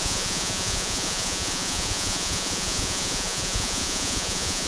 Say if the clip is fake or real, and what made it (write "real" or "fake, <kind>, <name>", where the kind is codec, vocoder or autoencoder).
fake, vocoder, Vocos